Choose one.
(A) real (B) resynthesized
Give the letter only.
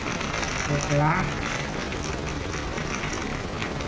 A